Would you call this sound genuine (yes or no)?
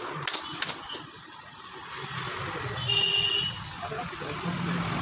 yes